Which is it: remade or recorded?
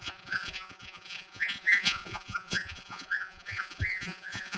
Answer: remade